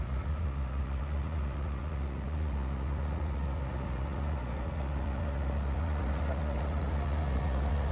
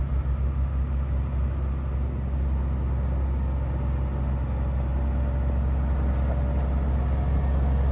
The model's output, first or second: first